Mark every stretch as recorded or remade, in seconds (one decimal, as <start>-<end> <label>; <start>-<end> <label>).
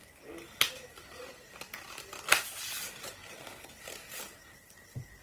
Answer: 0.0-1.8 recorded; 1.8-2.8 remade; 2.8-3.2 recorded; 3.2-3.7 remade; 3.7-5.2 recorded